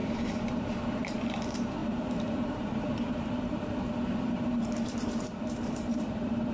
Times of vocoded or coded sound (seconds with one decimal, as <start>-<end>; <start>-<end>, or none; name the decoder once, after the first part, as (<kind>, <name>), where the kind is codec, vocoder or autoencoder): 0.0-6.5 (vocoder, BigVGAN v2)